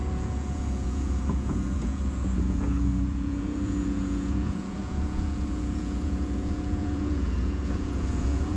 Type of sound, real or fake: fake